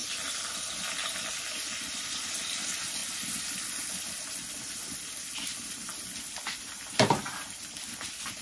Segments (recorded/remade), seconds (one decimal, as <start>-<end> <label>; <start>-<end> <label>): 0.0-0.8 remade; 0.8-3.0 recorded; 3.0-3.5 remade; 3.5-8.4 recorded